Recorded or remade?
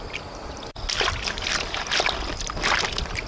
recorded